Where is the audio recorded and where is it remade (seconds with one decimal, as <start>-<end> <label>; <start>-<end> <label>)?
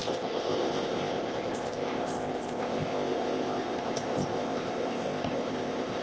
0.0-6.0 remade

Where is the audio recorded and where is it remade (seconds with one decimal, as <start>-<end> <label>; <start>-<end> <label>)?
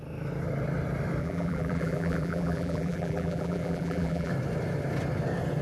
0.0-1.2 recorded; 1.2-4.3 remade; 4.3-5.6 recorded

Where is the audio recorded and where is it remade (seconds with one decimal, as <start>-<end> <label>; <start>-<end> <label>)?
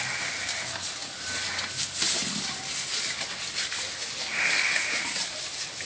0.0-1.0 recorded; 1.0-1.5 remade; 1.5-5.8 recorded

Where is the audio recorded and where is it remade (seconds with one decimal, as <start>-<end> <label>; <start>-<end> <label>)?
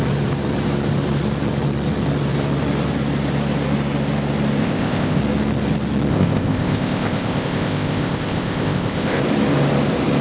0.0-4.6 recorded; 4.6-5.2 remade; 5.2-6.1 recorded; 6.1-9.2 remade; 9.2-10.2 recorded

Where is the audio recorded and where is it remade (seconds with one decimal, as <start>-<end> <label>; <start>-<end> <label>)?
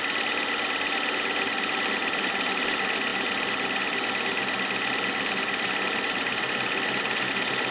0.0-7.7 recorded